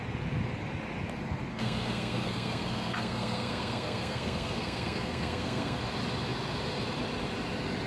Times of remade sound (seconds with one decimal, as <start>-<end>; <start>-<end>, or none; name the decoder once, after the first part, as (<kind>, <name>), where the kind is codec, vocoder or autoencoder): 1.5-5.8 (codec, SNAC)